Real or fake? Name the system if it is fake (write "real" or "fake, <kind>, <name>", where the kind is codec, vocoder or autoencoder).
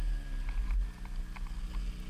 real